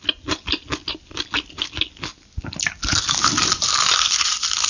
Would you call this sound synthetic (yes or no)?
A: no